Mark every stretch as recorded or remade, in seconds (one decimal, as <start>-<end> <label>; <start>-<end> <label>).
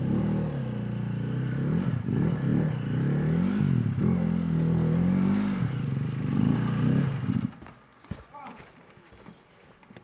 0.0-7.9 recorded; 7.9-8.6 remade; 8.6-10.0 recorded